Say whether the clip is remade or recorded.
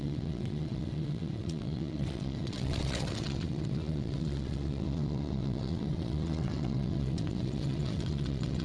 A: remade